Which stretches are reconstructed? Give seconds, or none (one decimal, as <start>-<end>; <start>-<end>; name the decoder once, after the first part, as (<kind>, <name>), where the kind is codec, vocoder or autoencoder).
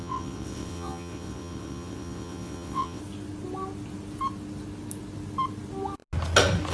0.0-3.0 (vocoder, WaveNeXt)